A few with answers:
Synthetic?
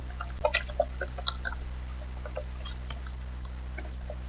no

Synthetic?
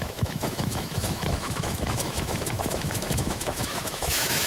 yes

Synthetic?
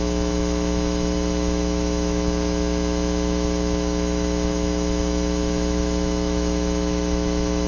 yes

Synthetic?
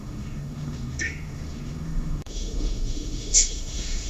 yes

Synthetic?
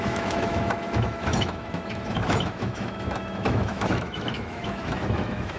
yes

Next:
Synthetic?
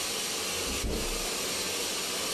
no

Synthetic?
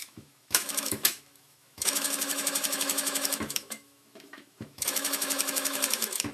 yes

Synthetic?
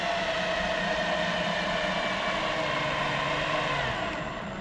no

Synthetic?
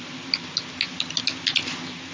no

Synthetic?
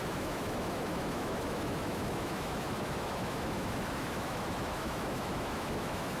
yes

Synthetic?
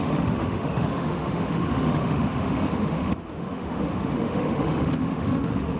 yes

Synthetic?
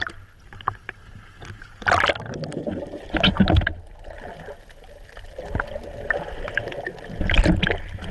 no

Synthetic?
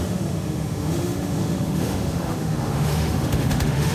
yes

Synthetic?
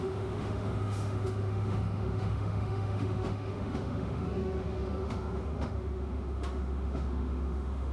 yes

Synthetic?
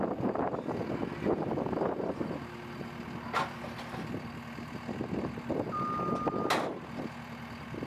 no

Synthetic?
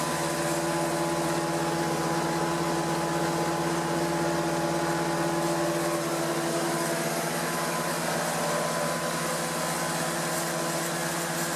no